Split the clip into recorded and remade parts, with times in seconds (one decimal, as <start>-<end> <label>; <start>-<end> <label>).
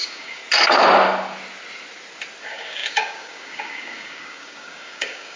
0.0-0.4 remade; 0.4-2.4 recorded; 2.4-5.4 remade